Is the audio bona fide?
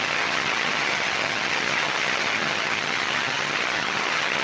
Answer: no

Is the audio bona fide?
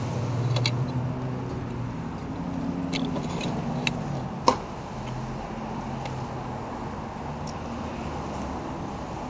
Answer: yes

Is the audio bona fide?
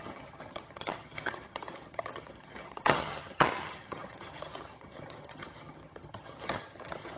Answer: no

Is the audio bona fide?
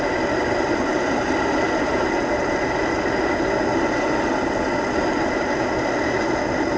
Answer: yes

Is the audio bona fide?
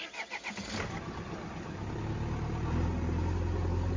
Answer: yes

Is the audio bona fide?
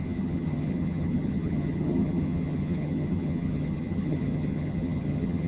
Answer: no